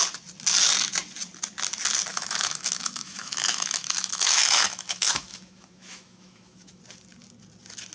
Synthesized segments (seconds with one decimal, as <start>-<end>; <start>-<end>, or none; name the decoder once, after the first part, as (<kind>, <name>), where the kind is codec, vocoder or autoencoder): 2.1-6.8 (autoencoder, DAC-VAE)